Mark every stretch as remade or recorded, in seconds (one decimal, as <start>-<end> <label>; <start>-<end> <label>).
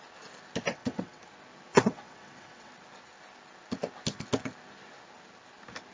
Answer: 0.0-0.7 recorded; 0.7-1.2 remade; 1.2-1.7 recorded; 1.7-2.7 remade; 2.7-5.9 recorded